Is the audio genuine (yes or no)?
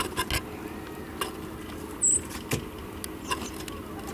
yes